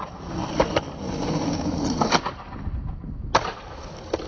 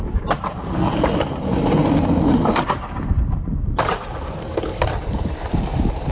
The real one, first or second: first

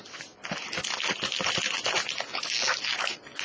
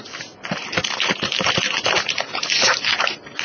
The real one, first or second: first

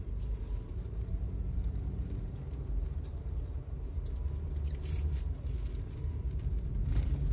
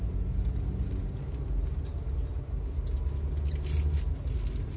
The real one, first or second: second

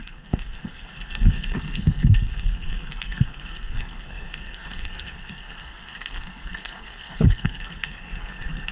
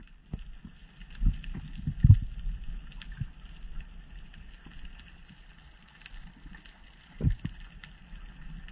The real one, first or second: second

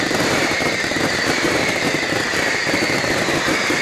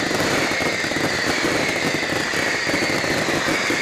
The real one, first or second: second